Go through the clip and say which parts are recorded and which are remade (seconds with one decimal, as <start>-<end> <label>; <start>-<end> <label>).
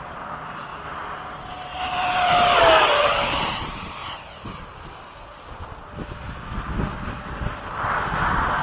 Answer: 0.0-4.0 remade; 4.0-6.7 recorded; 6.7-8.6 remade